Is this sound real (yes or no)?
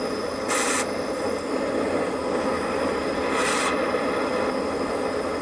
yes